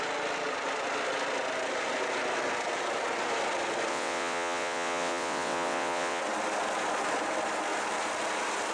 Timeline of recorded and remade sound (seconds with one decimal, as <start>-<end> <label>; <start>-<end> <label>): 0.0-3.9 recorded; 3.9-6.2 remade; 6.2-8.7 recorded